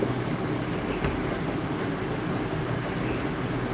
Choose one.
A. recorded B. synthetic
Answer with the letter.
A